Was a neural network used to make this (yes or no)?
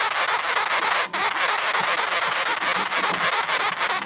no